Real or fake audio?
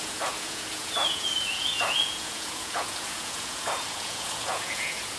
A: fake